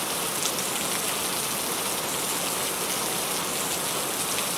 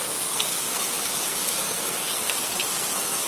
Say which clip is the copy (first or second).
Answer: second